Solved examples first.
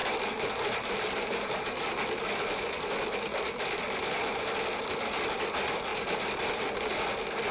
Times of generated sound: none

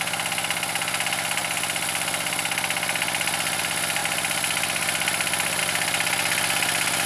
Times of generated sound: none

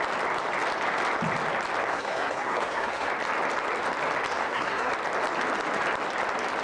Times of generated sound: 1.9-3.1 (codec, SNAC); 4.4-4.9

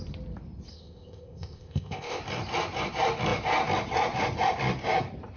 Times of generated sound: 0.7-2.2 (codec, ZipCodec)

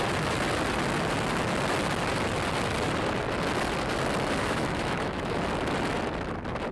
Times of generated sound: 4.4-5.4 (autoencoder, DAC-VAE)